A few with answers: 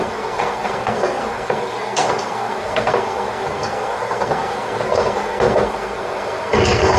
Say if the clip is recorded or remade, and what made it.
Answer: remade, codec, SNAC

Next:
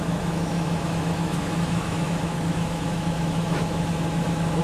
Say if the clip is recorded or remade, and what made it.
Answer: remade, autoencoder, DAC-VAE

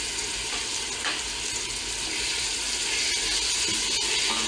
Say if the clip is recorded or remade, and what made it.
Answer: recorded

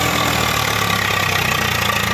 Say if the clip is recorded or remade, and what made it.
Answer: recorded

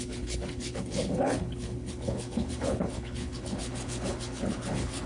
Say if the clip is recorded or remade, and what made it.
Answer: remade, codec, HILCodec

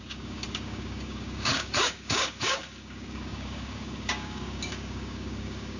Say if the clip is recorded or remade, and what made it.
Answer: remade, codec, DAC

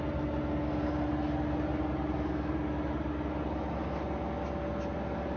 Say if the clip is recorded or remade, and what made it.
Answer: recorded